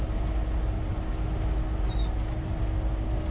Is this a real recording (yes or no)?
yes